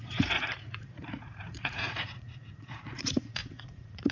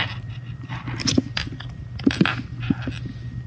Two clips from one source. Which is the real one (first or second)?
second